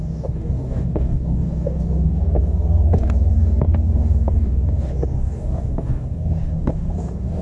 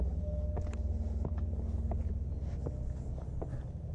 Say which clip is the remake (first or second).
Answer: first